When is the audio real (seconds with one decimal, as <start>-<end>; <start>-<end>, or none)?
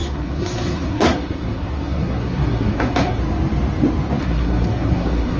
3.2-4.2